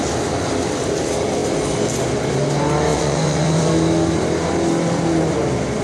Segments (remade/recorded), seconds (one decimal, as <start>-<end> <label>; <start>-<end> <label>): 0.0-2.9 recorded; 2.9-3.7 remade; 3.7-5.8 recorded